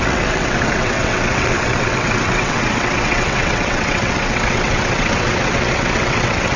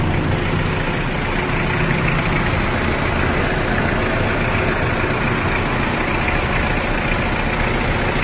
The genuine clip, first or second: second